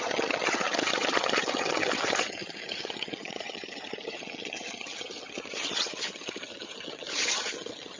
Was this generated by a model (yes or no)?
yes